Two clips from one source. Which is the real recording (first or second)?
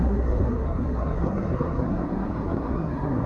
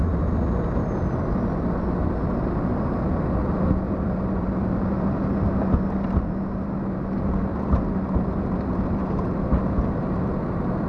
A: second